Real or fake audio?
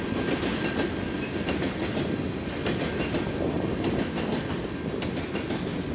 real